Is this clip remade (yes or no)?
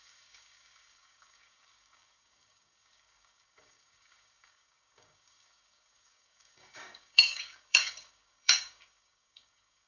yes